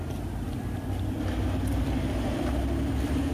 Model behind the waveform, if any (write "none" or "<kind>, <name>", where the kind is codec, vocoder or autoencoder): none